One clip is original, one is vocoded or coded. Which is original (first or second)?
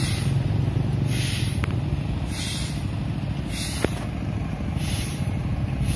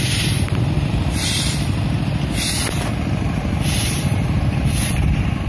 first